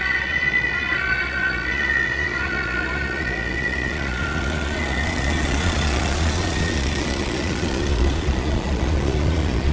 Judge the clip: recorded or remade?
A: remade